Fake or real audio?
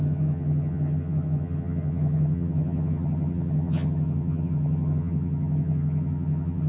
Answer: fake